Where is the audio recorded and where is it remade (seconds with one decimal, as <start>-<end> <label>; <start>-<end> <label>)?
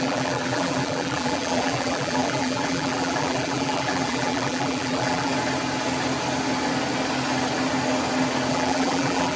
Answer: 0.0-5.3 remade; 5.3-8.5 recorded; 8.5-9.4 remade